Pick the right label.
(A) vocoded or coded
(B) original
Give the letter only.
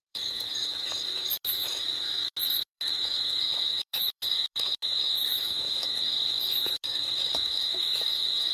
A